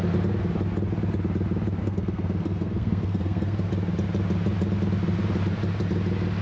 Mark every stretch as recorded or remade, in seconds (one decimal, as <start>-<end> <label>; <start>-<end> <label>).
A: 0.0-1.8 recorded; 1.8-3.7 remade; 3.7-6.4 recorded